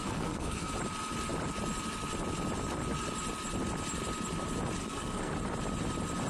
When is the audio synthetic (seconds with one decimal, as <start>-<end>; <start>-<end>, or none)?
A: 0.0-0.7; 4.8-5.3